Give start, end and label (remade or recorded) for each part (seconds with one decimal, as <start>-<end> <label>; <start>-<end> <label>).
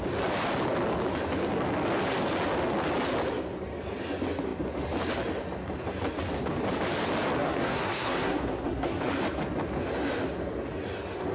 0.0-7.4 recorded; 7.4-9.1 remade; 9.1-11.3 recorded